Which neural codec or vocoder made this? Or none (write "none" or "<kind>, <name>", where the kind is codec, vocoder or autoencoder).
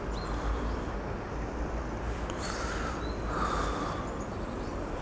none